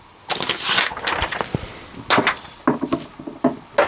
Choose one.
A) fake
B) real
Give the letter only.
B